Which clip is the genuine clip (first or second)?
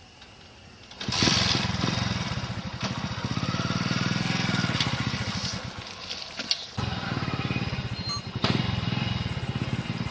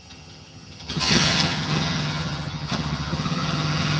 first